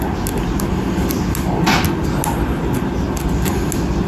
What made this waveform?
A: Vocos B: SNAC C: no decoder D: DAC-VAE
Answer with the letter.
C